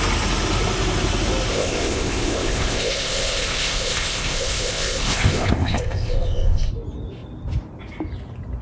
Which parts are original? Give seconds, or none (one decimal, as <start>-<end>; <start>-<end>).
0.0-1.5; 6.7-8.6